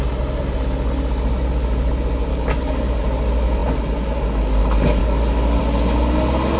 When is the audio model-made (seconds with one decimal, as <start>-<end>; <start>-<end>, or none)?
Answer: 2.3-3.0; 5.0-5.6